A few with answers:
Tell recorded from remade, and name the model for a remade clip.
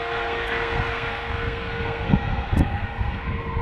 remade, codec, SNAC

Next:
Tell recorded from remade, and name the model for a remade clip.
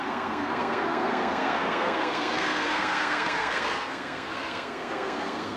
remade, codec, SNAC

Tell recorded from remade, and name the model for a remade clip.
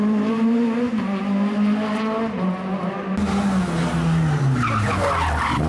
recorded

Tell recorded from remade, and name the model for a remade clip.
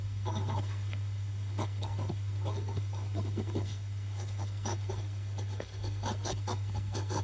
remade, codec, SNAC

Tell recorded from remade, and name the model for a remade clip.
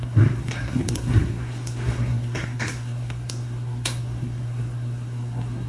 remade, codec, SNAC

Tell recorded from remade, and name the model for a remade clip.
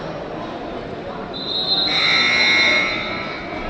recorded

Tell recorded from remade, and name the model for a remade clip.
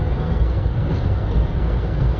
remade, codec, SNAC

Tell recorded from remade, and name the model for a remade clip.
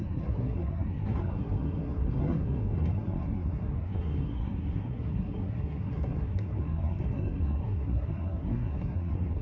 remade, codec, SNAC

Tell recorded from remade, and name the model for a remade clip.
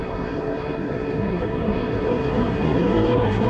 remade, codec, SNAC